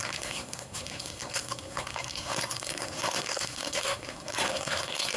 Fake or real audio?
fake